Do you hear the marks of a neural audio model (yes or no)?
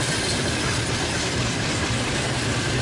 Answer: yes